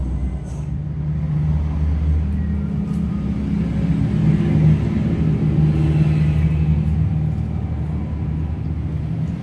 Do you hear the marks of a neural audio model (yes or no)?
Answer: no